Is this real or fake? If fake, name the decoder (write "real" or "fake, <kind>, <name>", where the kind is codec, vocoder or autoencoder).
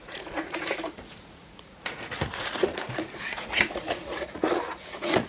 fake, vocoder, Vocos